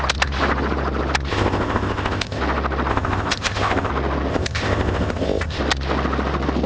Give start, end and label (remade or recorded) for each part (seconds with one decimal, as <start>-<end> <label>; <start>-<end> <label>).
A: 0.0-1.3 recorded; 1.3-2.4 remade; 2.4-2.9 recorded; 2.9-3.9 remade; 3.9-4.3 recorded; 4.3-5.6 remade; 5.6-6.7 recorded